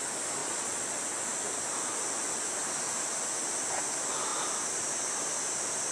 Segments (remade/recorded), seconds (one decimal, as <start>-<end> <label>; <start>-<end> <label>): 0.0-0.4 recorded; 0.4-1.0 remade; 1.0-5.9 recorded